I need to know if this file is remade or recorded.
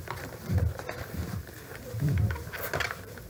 remade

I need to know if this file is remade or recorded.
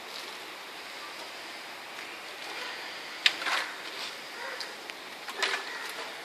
remade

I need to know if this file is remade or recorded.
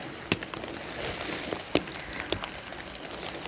recorded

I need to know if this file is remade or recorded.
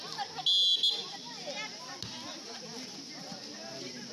recorded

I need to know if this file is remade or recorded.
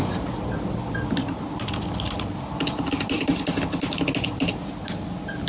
recorded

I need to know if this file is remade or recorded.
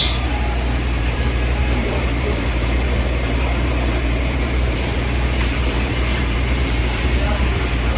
remade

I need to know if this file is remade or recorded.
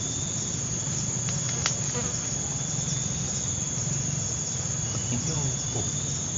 recorded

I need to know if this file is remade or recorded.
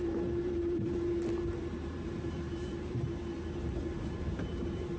remade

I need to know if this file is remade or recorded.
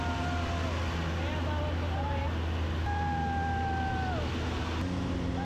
recorded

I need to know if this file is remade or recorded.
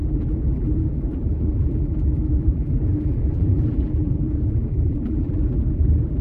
remade